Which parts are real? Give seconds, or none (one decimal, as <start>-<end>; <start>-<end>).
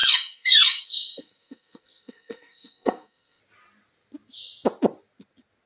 3.4-5.7